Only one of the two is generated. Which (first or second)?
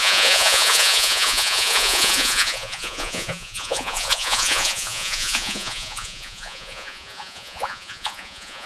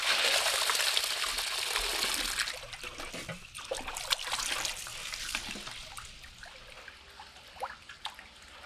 first